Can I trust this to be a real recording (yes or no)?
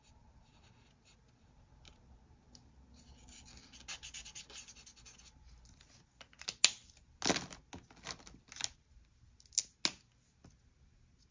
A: yes